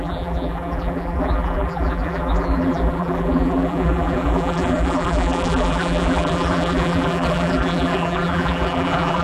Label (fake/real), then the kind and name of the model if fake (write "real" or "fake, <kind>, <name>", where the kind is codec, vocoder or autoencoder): fake, vocoder, BigVGAN v2